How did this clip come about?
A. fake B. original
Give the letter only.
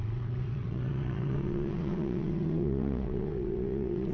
A